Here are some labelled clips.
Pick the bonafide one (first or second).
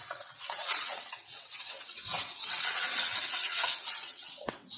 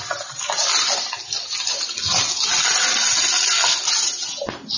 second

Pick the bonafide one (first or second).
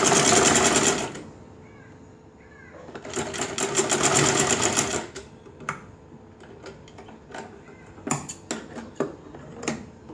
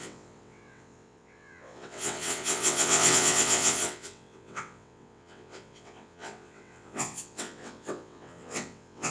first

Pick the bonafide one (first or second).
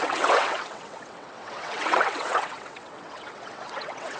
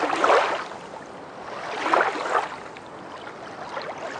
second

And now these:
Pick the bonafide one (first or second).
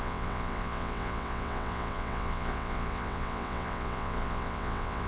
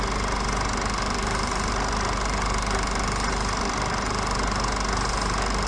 second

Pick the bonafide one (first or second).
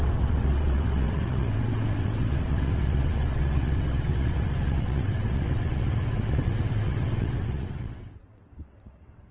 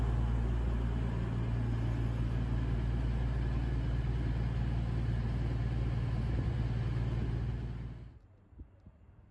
second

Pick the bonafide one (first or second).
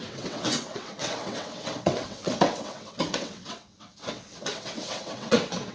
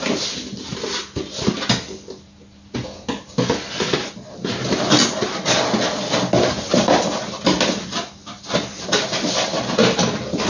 second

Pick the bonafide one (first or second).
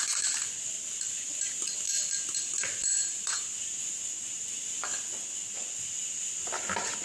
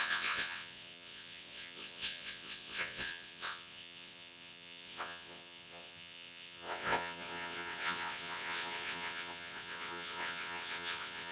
first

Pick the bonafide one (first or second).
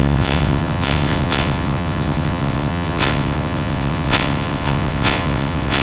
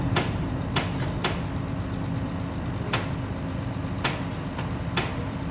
second